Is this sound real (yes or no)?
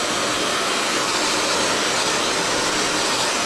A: yes